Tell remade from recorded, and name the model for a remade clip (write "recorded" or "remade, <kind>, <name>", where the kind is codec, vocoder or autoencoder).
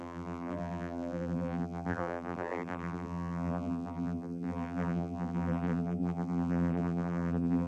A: remade, vocoder, BigVGAN v2